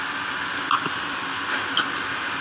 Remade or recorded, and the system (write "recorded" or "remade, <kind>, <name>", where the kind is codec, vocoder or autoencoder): recorded